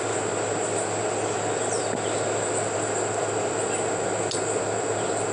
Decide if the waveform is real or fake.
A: real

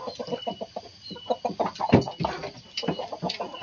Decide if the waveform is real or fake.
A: real